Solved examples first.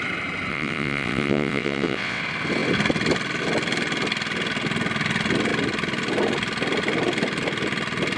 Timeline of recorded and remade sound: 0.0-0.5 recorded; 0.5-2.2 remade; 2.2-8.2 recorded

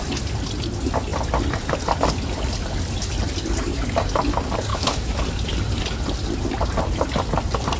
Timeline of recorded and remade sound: 0.0-4.7 recorded; 4.7-5.2 remade; 5.2-7.8 recorded

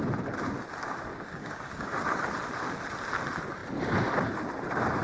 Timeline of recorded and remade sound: 0.0-1.1 recorded; 1.1-2.0 remade; 2.0-5.0 recorded

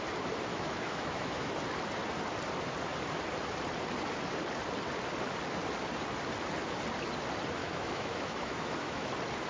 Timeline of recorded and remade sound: 0.0-0.5 recorded; 0.5-1.5 remade; 1.5-7.6 recorded; 7.6-9.1 remade; 9.1-9.5 recorded

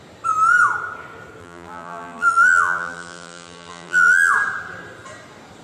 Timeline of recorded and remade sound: 0.0-1.4 recorded; 1.4-4.3 remade; 4.3-5.6 recorded

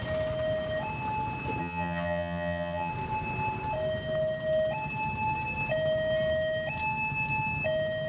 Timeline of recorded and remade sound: 0.0-1.6 recorded; 1.6-2.9 remade; 2.9-8.1 recorded

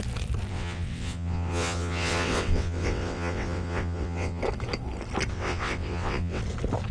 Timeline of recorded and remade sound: 0.0-0.5 recorded; 0.5-4.4 remade; 4.4-5.3 recorded; 5.3-6.4 remade; 6.4-6.9 recorded